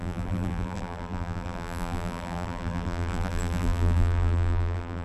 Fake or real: fake